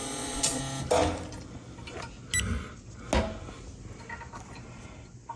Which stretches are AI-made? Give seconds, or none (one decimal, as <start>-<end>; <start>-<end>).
0.0-0.6